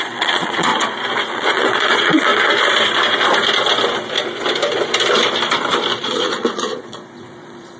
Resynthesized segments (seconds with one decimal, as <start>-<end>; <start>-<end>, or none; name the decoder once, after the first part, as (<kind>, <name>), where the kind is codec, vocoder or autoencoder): 0.0-0.7 (vocoder, Vocos); 1.3-2.3; 6.0-7.8